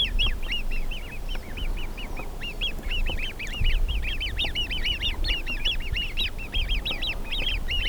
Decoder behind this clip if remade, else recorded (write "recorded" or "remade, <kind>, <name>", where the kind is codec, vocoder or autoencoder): remade, vocoder, BigVGAN v2